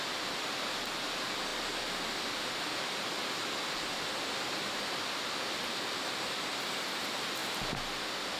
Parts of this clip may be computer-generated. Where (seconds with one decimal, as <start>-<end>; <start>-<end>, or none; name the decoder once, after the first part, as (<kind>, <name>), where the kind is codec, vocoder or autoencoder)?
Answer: none